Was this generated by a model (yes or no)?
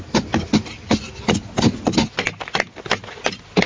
no